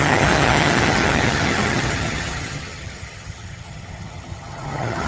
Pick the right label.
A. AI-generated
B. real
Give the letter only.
A